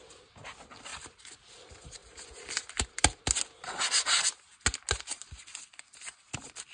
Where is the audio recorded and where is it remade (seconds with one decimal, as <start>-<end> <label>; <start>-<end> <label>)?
0.0-6.7 recorded